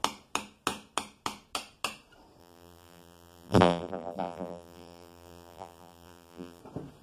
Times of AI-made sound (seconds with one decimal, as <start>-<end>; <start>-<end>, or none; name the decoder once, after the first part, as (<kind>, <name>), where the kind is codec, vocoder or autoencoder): 2.4-6.6 (vocoder, BigVGAN v2)